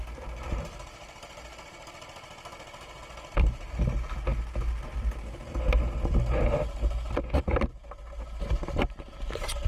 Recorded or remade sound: recorded